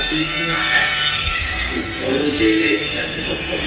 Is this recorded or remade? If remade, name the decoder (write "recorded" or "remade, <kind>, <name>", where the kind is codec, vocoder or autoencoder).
remade, codec, SNAC